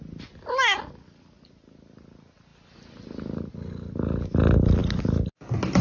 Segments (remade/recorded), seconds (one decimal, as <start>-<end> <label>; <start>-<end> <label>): 0.0-5.8 recorded